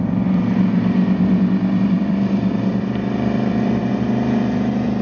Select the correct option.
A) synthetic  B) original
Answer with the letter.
A